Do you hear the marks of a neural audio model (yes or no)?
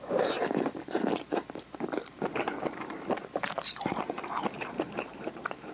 yes